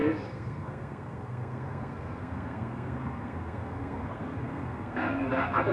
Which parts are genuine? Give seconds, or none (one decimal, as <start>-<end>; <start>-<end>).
none